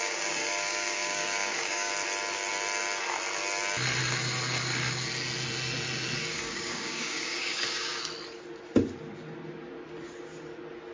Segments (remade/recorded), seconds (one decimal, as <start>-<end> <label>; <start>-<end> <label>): 0.0-1.9 remade; 1.9-6.3 recorded; 6.3-8.0 remade; 8.0-10.9 recorded